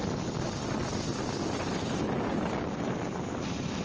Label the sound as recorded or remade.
recorded